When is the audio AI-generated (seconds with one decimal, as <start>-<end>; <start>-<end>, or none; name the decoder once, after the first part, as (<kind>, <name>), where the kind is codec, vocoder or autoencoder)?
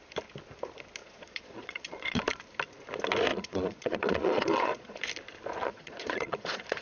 1.0-2.2 (vocoder, Vocos); 3.3-5.1; 5.6-6.8